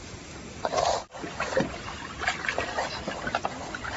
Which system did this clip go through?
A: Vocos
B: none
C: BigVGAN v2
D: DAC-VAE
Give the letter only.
B